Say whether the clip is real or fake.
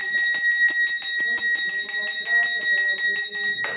real